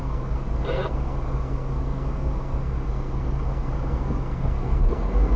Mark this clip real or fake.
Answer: fake